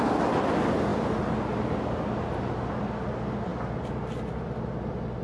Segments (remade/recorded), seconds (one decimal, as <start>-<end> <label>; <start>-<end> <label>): 0.0-5.2 recorded